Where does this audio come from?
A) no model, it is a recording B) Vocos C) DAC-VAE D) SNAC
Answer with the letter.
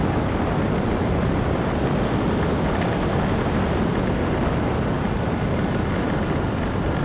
A